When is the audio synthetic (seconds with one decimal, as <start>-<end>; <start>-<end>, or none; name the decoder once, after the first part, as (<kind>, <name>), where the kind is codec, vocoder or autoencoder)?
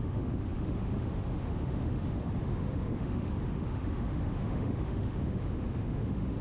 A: 0.0-6.4 (autoencoder, DAC-VAE)